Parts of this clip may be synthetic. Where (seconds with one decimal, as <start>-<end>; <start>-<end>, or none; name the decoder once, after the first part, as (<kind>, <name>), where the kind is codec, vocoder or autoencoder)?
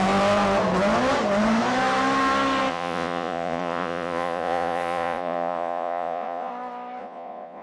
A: 2.7-6.5 (vocoder, Vocos); 7.0-7.6